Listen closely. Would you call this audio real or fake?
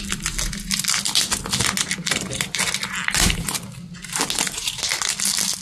real